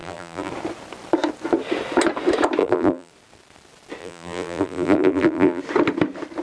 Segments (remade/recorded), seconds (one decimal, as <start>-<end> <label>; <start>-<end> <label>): 0.0-0.5 remade; 0.5-2.6 recorded; 2.6-3.1 remade; 3.1-4.0 recorded; 4.0-5.6 remade; 5.6-6.4 recorded